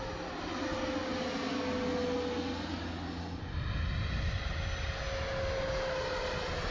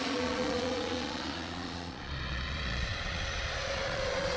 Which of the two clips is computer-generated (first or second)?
second